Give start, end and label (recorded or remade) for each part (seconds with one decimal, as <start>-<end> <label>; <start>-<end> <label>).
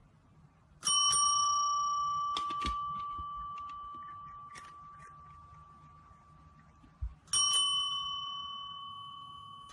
0.0-8.8 recorded; 8.8-9.7 remade